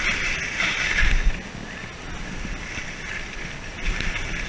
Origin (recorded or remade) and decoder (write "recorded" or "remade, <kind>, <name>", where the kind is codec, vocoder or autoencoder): recorded